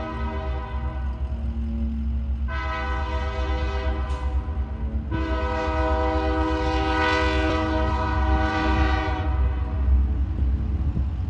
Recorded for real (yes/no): yes